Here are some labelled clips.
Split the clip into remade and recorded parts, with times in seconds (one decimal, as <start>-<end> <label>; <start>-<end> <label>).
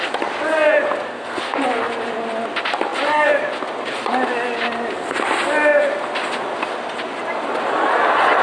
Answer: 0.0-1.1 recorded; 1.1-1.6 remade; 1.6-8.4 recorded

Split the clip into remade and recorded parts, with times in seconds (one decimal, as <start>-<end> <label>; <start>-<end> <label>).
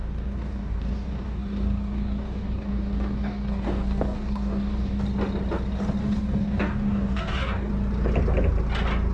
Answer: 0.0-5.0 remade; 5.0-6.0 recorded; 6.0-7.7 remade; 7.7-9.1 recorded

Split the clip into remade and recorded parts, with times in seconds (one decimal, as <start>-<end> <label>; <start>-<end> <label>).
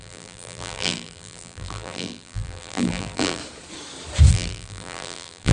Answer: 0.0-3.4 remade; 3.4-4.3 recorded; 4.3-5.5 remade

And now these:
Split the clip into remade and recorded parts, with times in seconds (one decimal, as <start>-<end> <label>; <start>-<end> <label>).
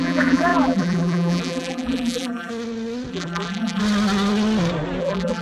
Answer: 0.0-2.5 remade; 2.5-3.1 recorded; 3.1-3.8 remade; 3.8-5.0 recorded; 5.0-5.4 remade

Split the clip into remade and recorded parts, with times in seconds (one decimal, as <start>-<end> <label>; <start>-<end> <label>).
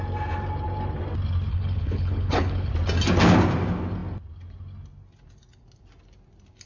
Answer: 0.0-1.5 recorded; 1.5-2.7 remade; 2.7-6.7 recorded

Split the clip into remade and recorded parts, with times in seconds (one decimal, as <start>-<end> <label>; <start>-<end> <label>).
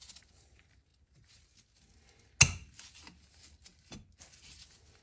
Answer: 0.0-5.0 recorded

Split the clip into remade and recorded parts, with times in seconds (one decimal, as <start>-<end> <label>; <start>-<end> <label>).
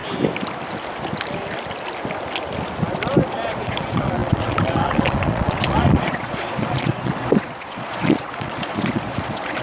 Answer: 0.0-3.5 recorded; 3.5-9.6 remade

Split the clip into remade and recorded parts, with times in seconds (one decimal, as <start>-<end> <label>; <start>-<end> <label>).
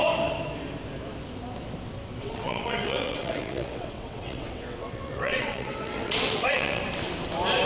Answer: 0.0-2.2 recorded; 2.2-6.8 remade; 6.8-7.7 recorded